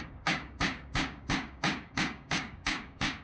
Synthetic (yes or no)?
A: yes